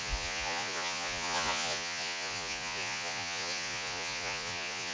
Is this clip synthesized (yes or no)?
yes